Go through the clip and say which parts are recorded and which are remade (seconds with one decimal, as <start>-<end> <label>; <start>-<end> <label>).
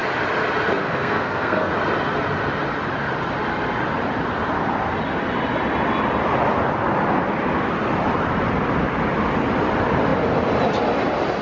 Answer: 0.0-0.8 recorded; 0.8-1.7 remade; 1.7-11.4 recorded